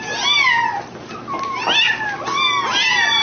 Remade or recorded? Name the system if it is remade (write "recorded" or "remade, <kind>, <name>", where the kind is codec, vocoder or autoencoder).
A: recorded